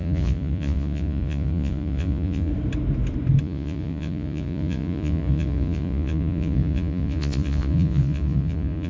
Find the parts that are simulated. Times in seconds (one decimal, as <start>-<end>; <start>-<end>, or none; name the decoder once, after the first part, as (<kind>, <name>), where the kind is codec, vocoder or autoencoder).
0.0-2.5 (vocoder, Vocos); 3.4-8.9